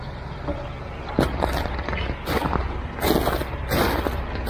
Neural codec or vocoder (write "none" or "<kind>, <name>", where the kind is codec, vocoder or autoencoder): none